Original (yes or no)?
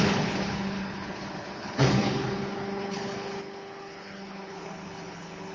no